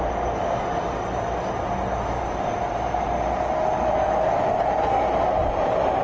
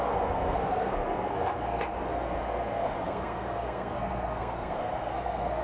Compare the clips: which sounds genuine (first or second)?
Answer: first